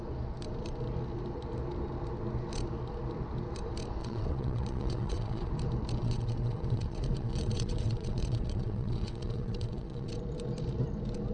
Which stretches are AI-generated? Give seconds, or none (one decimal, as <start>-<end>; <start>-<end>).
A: 4.0-5.5; 6.0-10.1